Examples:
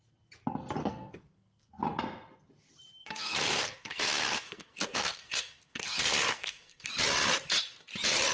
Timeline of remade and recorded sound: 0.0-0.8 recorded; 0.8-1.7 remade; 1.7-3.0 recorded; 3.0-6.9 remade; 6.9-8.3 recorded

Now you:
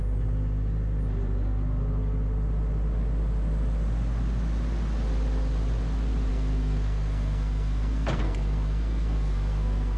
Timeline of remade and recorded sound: 0.0-6.3 recorded; 6.3-10.0 remade

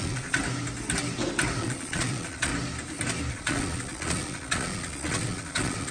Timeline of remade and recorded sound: 0.0-0.4 remade; 0.4-1.6 recorded; 1.6-2.5 remade; 2.5-3.3 recorded; 3.3-5.9 remade

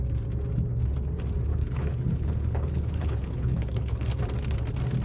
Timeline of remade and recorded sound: 0.0-1.5 recorded; 1.5-4.2 remade; 4.2-5.0 recorded

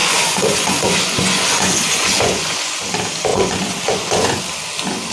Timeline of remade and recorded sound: 0.0-2.8 remade; 2.8-3.3 recorded; 3.3-4.4 remade; 4.4-5.1 recorded